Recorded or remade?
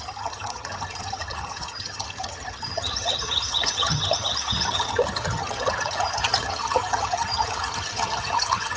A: remade